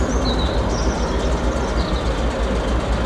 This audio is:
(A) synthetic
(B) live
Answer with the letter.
B